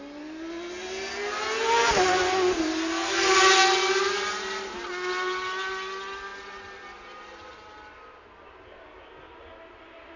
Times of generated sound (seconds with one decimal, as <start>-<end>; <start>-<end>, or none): none